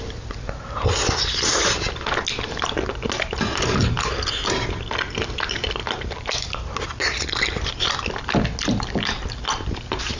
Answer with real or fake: real